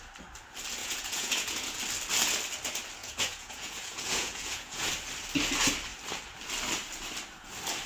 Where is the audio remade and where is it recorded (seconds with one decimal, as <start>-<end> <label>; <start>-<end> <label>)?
0.0-0.8 recorded; 0.8-1.8 remade; 1.8-3.0 recorded; 3.0-4.9 remade; 4.9-7.9 recorded